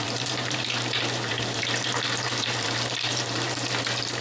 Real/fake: fake